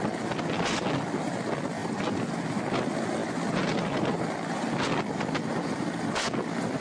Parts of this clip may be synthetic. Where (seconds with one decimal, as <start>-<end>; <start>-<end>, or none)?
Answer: none